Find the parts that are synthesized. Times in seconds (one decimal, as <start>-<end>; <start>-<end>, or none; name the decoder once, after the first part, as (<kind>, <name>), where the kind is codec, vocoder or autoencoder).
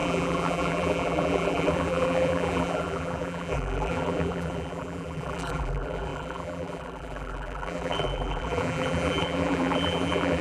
0.0-10.4 (vocoder, BigVGAN v2)